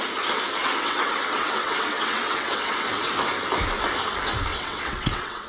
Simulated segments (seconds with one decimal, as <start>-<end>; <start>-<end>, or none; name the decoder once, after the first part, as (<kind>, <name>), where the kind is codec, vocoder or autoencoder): 0.6-3.1 (vocoder, WaveNeXt); 4.5-5.5